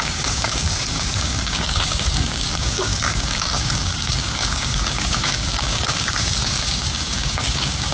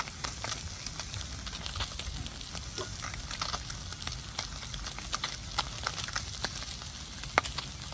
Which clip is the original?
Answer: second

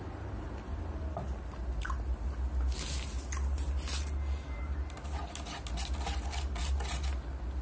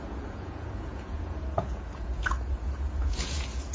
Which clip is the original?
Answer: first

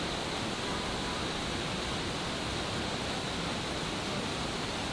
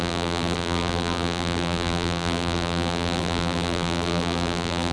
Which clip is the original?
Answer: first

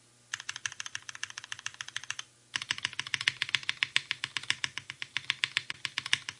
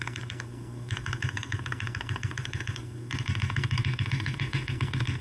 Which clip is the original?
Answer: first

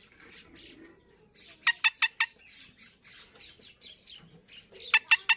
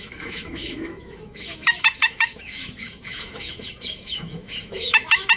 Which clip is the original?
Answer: first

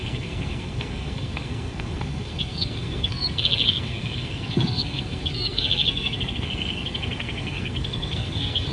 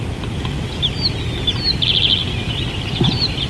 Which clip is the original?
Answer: second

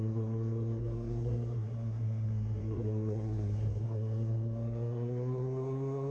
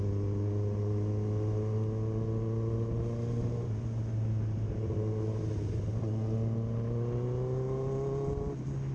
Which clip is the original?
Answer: second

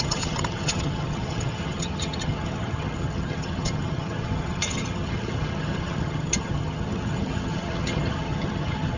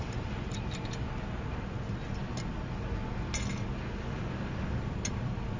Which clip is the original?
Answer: second